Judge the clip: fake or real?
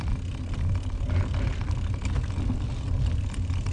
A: real